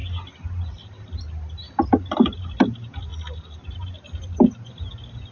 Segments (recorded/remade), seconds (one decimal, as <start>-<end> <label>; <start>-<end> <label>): 0.0-5.3 recorded